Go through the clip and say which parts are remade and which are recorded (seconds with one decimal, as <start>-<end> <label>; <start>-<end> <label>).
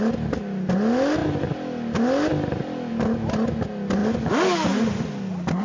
0.0-5.6 recorded